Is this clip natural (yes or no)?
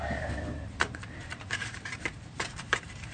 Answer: no